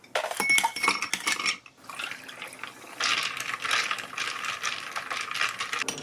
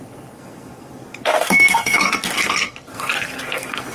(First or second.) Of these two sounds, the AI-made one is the second